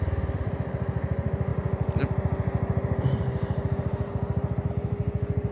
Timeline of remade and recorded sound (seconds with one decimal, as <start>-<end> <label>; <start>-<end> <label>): 0.0-5.5 recorded